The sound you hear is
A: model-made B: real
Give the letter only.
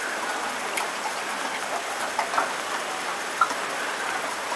B